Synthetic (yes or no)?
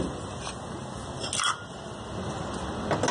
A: no